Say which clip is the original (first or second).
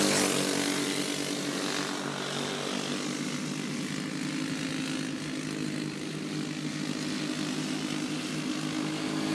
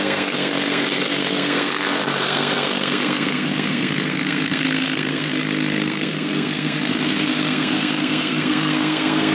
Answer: first